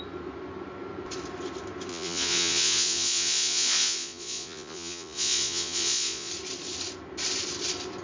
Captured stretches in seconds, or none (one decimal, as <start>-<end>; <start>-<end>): 0.0-1.9; 6.3-8.0